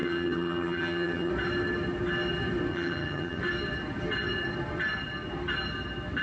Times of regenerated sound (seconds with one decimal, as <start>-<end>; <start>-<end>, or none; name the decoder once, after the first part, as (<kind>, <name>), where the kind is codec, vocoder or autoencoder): 0.0-1.3 (vocoder, HiFi-GAN); 2.7-3.4